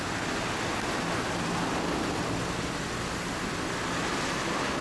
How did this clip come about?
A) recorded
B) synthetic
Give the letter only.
A